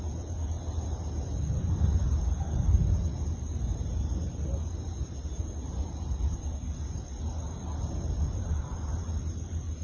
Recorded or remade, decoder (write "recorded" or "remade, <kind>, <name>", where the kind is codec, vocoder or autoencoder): recorded